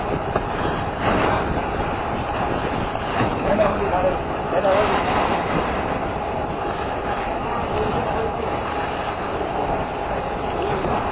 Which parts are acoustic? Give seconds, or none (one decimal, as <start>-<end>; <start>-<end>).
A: 0.0-3.1; 3.7-11.1